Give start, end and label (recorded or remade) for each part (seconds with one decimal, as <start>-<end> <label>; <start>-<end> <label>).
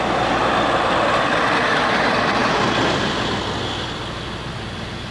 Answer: 0.0-5.1 remade